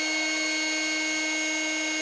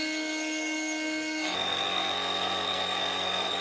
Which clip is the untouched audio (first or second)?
first